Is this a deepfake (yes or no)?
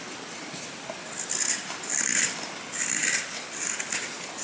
no